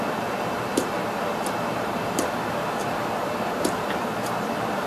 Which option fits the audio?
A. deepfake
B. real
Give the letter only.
A